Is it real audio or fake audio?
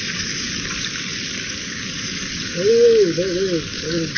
fake